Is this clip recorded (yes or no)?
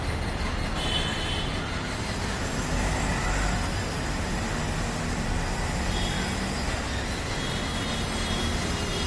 yes